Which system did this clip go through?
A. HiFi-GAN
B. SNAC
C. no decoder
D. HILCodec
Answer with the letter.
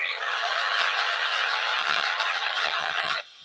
A